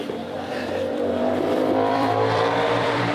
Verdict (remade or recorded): remade